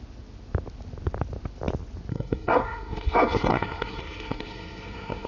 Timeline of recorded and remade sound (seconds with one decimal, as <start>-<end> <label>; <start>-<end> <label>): 0.0-2.1 recorded; 2.1-5.3 remade